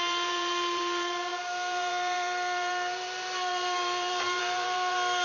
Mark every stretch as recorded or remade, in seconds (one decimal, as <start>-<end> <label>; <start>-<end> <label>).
0.0-5.2 remade